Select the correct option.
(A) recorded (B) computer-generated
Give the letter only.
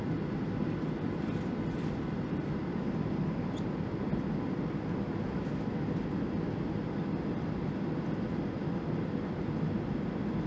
A